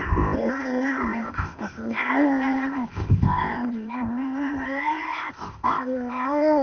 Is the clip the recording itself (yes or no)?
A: no